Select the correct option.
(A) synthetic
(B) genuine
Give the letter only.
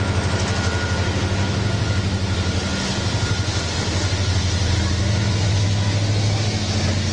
B